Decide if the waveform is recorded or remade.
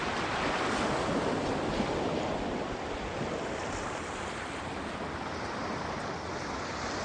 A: recorded